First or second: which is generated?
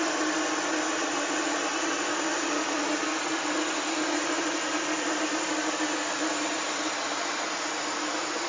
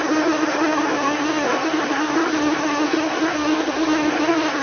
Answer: second